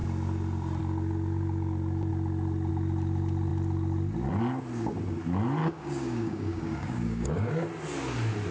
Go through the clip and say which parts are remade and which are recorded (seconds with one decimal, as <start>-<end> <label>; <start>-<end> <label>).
0.0-5.6 recorded; 5.6-7.5 remade; 7.5-8.5 recorded